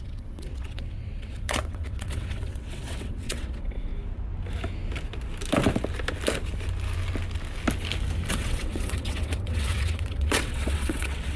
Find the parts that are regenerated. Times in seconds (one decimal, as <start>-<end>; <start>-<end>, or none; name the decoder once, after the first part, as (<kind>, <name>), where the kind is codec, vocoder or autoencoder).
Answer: 0.0-3.9 (vocoder, WaveNeXt); 8.3-11.4

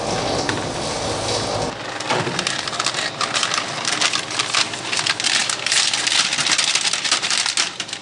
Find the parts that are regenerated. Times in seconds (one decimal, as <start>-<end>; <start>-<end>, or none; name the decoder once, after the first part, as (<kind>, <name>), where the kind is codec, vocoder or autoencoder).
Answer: none

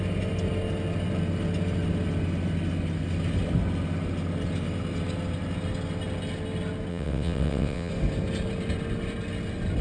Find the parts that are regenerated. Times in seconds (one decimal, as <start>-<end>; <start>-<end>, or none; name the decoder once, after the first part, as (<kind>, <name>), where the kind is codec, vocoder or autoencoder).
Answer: 6.9-7.9 (vocoder, WaveNeXt)

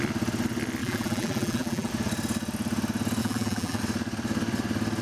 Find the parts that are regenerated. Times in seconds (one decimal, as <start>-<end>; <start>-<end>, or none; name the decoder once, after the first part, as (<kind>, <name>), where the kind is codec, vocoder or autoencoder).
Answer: 0.8-1.9 (vocoder, BigVGAN v2); 3.2-3.8

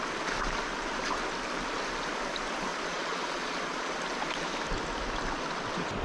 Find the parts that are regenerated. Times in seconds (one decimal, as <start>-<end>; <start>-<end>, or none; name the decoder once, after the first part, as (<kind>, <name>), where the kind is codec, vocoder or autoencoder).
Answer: 2.7-4.0 (vocoder, Vocos)

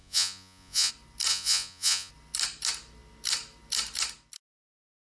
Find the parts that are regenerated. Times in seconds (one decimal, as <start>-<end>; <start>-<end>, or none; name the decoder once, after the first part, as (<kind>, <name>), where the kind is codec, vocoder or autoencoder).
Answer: 0.0-0.9 (vocoder, Vocos); 1.3-2.1